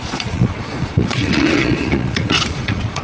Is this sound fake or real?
fake